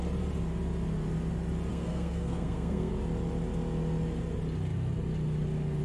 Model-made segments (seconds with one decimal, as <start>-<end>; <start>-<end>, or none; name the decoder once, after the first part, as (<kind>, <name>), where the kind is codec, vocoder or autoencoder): 1.7-2.9 (codec, SNAC)